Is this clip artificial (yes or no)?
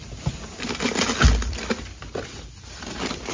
no